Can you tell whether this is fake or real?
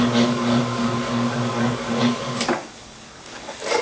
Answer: fake